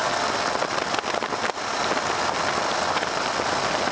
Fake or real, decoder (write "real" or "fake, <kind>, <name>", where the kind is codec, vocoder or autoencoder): real